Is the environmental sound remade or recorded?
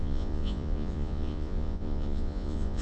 remade